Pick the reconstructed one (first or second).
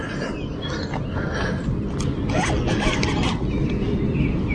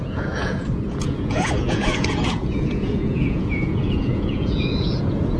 second